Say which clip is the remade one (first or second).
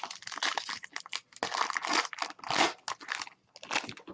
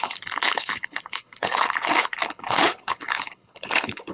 second